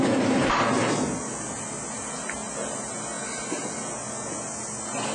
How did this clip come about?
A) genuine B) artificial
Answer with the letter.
A